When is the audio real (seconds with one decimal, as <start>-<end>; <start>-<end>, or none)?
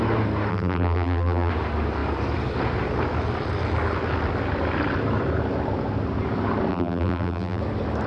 0.0-0.5; 1.5-6.7; 7.6-8.1